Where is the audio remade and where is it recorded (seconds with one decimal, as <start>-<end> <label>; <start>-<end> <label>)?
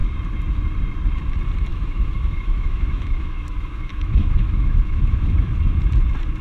0.0-1.7 recorded; 1.7-5.5 remade; 5.5-6.4 recorded